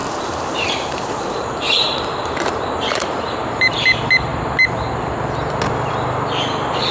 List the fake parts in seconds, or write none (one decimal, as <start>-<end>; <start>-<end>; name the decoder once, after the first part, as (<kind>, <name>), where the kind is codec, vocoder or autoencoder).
0.0-3.7 (vocoder, BigVGAN v2)